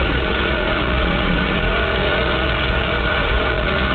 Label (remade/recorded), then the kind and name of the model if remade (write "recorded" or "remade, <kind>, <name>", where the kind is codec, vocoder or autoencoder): remade, vocoder, Vocos